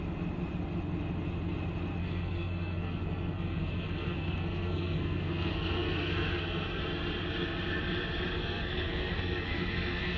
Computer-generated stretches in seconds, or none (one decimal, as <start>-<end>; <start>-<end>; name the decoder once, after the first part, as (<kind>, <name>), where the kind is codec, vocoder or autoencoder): 2.0-6.8 (codec, SNAC); 8.4-10.2

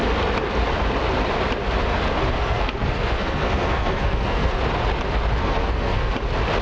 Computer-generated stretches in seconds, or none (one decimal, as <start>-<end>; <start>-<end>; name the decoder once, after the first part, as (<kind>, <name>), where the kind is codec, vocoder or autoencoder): 2.4-4.6 (codec, SNAC); 5.4-6.1

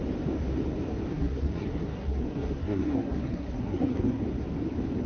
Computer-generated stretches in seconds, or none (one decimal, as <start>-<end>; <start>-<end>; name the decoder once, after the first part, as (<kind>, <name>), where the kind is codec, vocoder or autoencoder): 1.1-4.2 (codec, SNAC)

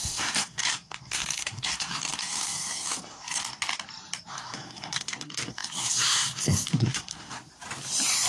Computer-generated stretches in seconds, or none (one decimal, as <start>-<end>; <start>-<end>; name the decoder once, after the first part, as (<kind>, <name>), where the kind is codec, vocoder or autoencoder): 0.0-3.4 (codec, SNAC); 4.3-7.5

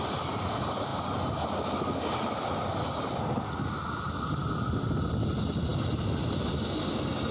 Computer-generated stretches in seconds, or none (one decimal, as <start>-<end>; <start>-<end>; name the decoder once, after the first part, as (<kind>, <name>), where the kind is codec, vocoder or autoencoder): none